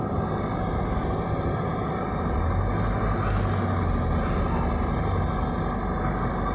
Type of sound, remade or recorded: recorded